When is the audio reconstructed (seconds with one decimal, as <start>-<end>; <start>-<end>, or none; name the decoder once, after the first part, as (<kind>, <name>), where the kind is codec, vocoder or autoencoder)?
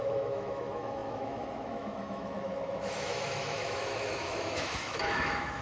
0.0-5.6 (autoencoder, DAC-VAE)